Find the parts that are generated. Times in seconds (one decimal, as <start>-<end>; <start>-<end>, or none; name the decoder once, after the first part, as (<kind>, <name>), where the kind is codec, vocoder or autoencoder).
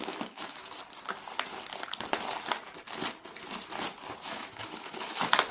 0.0-0.8 (autoencoder, DAC-VAE); 4.1-5.5